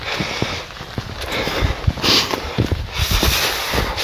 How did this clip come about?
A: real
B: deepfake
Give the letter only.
A